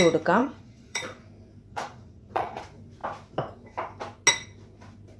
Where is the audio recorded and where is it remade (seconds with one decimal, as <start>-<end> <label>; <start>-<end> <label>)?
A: 0.0-0.4 recorded; 0.4-1.2 remade; 1.2-1.7 recorded; 1.7-2.6 remade; 2.6-5.2 recorded